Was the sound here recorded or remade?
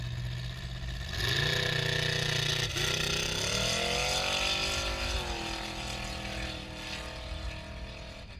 recorded